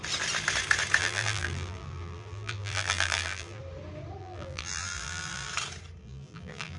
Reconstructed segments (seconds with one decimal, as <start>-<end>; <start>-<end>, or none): 1.0-3.6; 4.2-5.5; 6.0-6.8